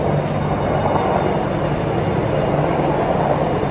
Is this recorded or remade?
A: recorded